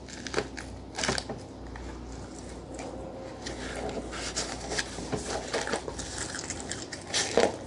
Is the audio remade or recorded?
recorded